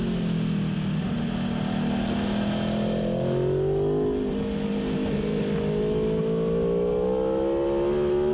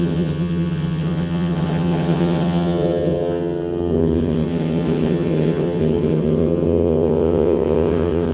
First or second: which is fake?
second